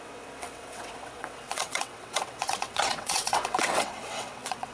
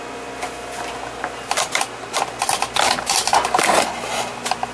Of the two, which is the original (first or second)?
second